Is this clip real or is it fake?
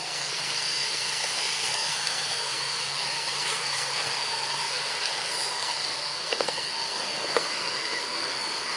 fake